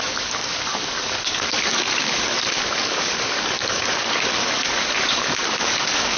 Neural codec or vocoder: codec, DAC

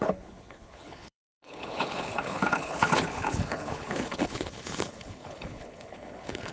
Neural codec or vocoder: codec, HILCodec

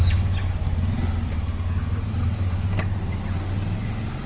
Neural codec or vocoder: none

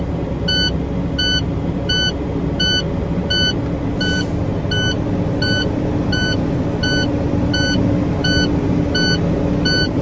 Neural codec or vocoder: none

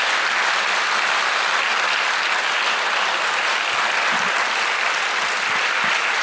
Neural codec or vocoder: none